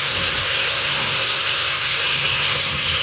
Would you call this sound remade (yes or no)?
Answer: yes